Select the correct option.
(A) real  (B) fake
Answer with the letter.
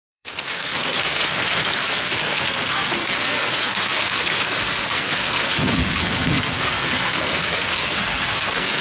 B